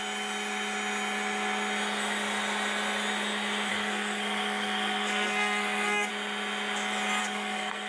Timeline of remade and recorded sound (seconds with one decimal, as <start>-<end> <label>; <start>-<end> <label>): 0.0-3.7 recorded; 3.7-6.1 remade; 6.1-7.2 recorded; 7.2-7.9 remade